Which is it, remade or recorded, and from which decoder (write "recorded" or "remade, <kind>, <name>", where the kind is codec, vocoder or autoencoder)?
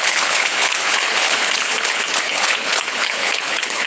remade, codec, HILCodec